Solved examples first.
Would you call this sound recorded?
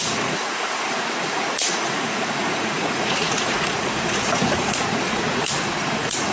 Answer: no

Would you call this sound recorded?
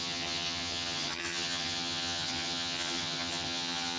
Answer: no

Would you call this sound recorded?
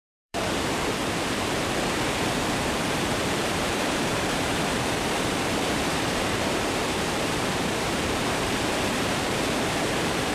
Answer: no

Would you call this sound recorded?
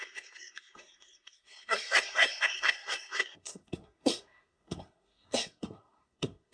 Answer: no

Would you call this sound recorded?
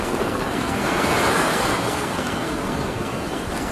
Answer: no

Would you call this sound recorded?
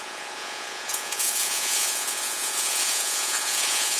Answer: no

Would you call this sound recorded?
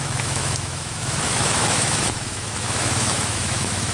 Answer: no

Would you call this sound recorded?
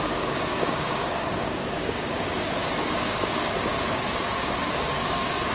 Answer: no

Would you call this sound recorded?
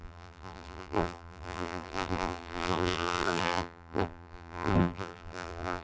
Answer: no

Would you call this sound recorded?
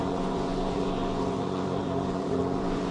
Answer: no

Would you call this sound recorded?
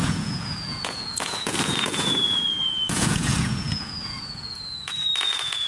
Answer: no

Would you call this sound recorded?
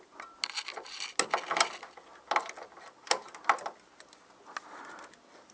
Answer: yes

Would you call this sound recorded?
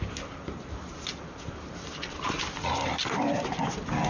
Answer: yes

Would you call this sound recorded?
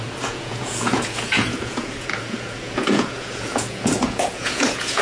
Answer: no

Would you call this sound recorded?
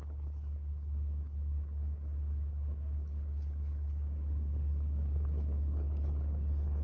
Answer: no